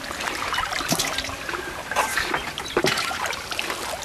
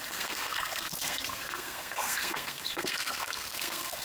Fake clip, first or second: second